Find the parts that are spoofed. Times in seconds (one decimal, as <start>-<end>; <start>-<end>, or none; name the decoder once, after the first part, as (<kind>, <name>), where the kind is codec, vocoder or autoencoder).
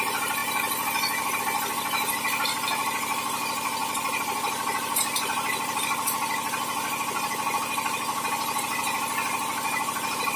3.8-5.8 (vocoder, BigVGAN v2)